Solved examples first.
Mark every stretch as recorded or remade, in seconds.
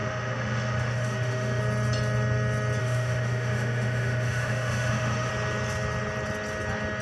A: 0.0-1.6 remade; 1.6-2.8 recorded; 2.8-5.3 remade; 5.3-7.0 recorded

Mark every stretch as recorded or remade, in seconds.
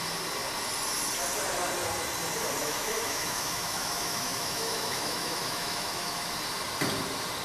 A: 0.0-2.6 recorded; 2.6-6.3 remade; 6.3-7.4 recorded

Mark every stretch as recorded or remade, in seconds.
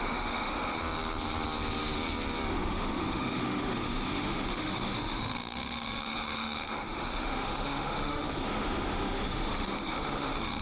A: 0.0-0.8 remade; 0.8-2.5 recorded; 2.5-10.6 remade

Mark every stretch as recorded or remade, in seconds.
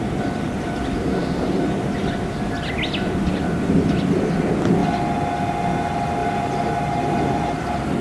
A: 0.0-8.0 recorded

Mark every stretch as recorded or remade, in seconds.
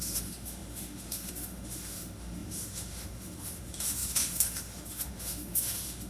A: 0.0-6.1 remade